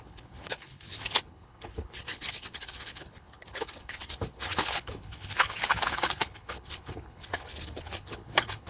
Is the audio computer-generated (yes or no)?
yes